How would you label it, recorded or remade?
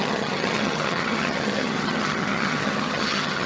remade